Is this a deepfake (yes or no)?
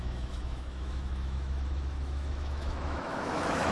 yes